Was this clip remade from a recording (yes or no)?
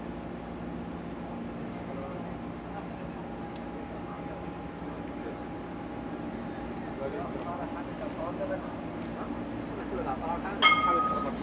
no